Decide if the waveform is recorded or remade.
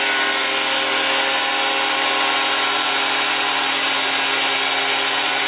recorded